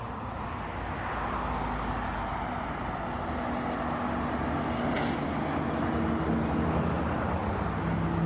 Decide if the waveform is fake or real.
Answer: real